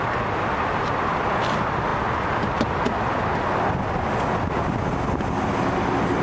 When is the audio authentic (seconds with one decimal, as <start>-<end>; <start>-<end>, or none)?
0.0-6.2

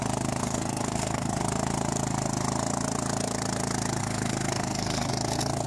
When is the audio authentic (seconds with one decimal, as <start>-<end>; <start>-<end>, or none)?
0.0-0.4; 1.4-4.0; 5.1-5.7

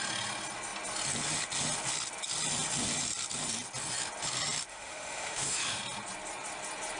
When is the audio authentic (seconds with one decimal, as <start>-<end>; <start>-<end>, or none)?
0.0-4.7; 5.8-7.0

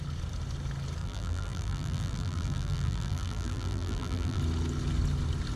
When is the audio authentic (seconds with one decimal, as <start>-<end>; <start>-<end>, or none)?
0.0-1.0; 4.4-5.6

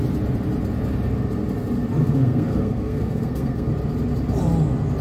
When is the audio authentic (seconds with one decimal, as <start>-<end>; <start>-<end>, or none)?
0.0-2.0; 3.7-5.0